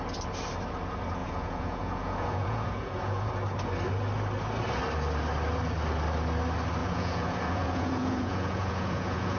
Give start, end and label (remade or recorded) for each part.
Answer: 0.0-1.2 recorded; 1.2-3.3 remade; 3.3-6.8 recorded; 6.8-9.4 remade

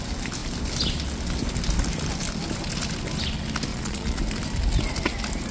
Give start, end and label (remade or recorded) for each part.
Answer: 0.0-3.7 recorded; 3.7-4.2 remade; 4.2-5.5 recorded

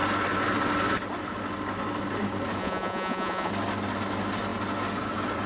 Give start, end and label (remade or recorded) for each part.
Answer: 0.0-2.6 recorded; 2.6-3.5 remade; 3.5-5.5 recorded

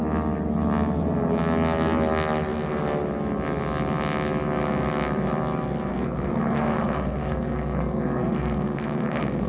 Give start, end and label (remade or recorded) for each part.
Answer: 0.0-5.9 recorded; 5.9-9.5 remade

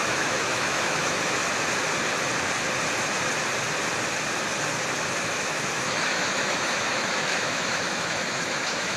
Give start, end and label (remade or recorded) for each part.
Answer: 0.0-1.4 remade; 1.4-5.1 recorded; 5.1-9.0 remade

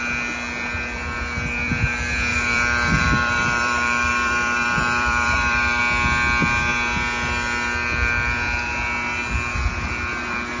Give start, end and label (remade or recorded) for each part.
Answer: 0.0-2.3 recorded; 2.3-5.8 remade; 5.8-10.6 recorded

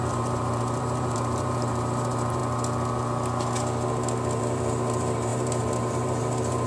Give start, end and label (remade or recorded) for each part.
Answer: 0.0-2.4 remade; 2.4-4.4 recorded; 4.4-6.7 remade

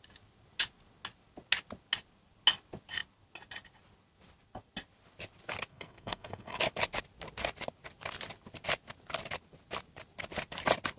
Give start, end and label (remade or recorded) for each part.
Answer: 0.0-5.7 recorded; 5.7-6.6 remade; 6.6-11.0 recorded